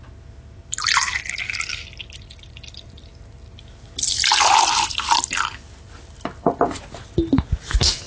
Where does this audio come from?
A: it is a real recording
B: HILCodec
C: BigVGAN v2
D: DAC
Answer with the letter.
A